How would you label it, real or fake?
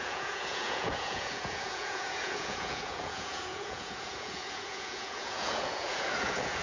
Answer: fake